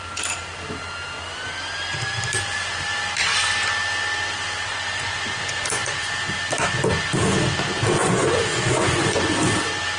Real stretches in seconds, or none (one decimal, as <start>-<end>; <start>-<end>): 0.0-4.7; 6.1-8.0; 9.4-10.0